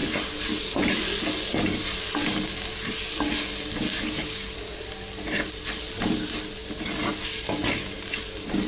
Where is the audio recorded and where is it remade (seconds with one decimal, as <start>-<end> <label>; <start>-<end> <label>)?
0.0-8.7 recorded

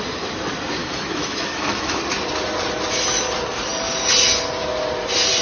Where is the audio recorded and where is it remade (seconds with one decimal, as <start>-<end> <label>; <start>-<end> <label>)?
0.0-0.8 recorded; 0.8-2.0 remade; 2.0-5.4 recorded

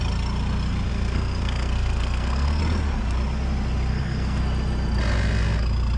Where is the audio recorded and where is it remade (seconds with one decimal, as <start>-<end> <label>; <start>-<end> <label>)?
0.0-0.9 recorded; 0.9-2.6 remade; 2.6-3.9 recorded; 3.9-4.4 remade; 4.4-6.0 recorded

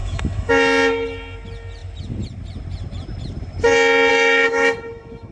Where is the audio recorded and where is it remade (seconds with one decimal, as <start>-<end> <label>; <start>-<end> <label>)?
0.0-0.5 remade; 0.5-4.1 recorded; 4.1-5.3 remade

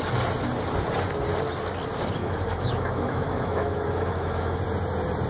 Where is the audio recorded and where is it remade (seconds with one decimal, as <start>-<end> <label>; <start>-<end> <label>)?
0.0-2.2 recorded; 2.2-4.6 remade; 4.6-5.3 recorded